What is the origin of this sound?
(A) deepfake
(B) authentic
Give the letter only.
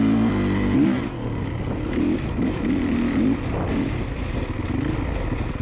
B